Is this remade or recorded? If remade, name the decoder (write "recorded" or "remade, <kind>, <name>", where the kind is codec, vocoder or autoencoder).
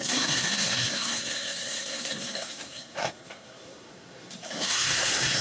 remade, codec, SNAC